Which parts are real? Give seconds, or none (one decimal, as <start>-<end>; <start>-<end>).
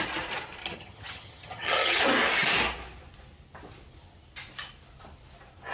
0.0-0.6; 2.0-5.7